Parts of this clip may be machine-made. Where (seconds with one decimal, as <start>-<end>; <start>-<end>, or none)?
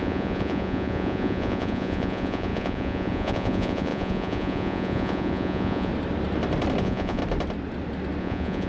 0.0-5.9; 6.8-7.2; 8.2-8.7